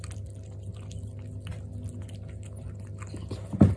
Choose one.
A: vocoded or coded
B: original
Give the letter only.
B